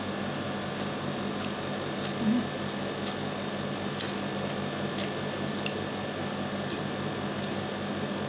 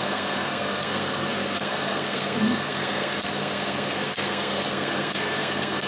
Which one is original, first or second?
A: first